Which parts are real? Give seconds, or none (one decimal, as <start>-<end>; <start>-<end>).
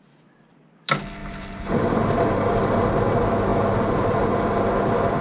0.0-1.2; 2.9-5.2